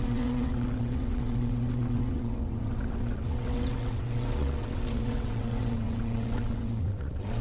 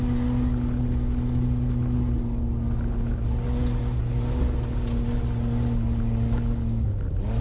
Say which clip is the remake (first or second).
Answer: first